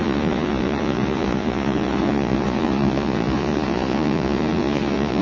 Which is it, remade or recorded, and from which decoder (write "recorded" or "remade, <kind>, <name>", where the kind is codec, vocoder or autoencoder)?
remade, vocoder, Vocos